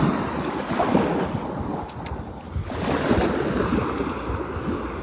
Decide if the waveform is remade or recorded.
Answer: recorded